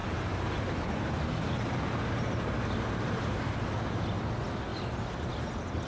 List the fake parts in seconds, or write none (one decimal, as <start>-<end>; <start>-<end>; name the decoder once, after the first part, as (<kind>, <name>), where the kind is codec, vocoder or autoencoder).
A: 0.0-3.5 (vocoder, BigVGAN v2); 4.7-5.3